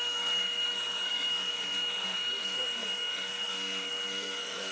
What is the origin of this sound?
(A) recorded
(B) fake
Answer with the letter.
B